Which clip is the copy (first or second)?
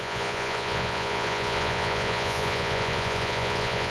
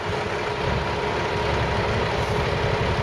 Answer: first